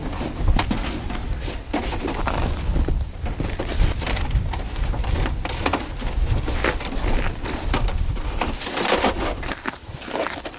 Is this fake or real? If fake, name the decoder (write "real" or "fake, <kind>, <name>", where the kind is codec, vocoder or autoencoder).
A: real